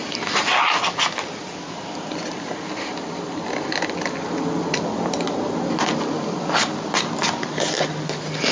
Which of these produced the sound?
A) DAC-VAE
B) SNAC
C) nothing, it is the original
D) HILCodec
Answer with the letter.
C